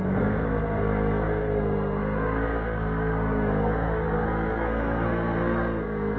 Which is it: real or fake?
fake